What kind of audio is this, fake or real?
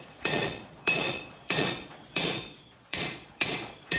fake